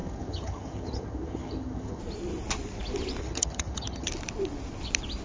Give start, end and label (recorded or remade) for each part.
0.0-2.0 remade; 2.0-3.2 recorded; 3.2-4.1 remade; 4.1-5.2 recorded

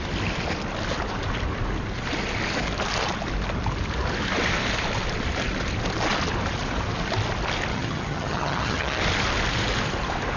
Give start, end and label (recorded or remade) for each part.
0.0-7.7 recorded; 7.7-9.0 remade; 9.0-10.4 recorded

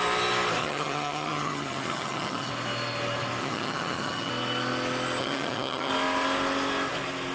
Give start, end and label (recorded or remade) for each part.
0.0-0.6 recorded; 0.6-2.5 remade; 2.5-3.4 recorded; 3.4-4.3 remade; 4.3-5.2 recorded; 5.2-5.9 remade; 5.9-7.3 recorded

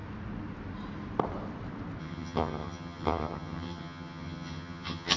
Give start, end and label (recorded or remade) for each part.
0.0-2.0 recorded; 2.0-5.2 remade

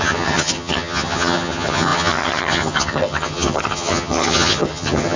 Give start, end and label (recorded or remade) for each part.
0.0-5.2 remade

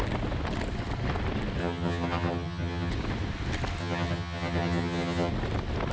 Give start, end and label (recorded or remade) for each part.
0.0-1.6 recorded; 1.6-2.9 remade; 2.9-3.8 recorded; 3.8-5.3 remade; 5.3-5.9 recorded